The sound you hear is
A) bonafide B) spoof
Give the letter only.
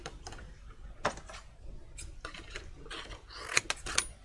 A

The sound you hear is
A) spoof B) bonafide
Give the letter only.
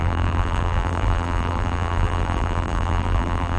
A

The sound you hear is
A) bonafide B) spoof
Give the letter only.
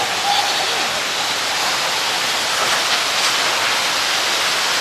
A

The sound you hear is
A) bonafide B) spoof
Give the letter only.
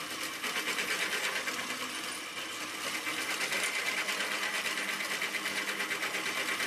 A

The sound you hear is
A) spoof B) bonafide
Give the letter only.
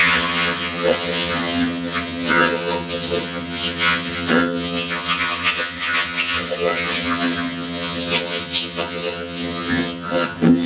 A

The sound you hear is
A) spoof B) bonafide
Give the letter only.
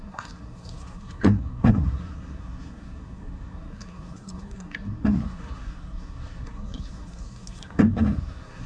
A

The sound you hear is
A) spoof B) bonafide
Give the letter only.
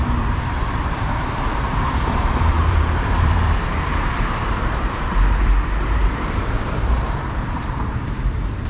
A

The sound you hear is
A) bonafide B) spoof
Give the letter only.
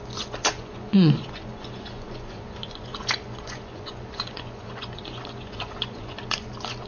B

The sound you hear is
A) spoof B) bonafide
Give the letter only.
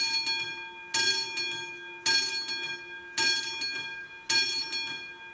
B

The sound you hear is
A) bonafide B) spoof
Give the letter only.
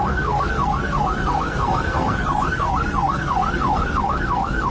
B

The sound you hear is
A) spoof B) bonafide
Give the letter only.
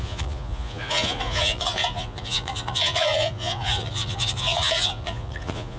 A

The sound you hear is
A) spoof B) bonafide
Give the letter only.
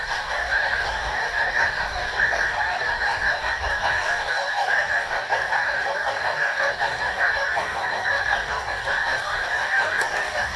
A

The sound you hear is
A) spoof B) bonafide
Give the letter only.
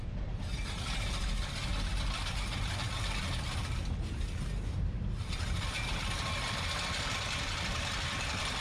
B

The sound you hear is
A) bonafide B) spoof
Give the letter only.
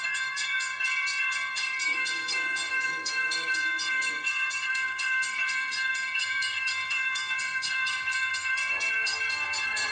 B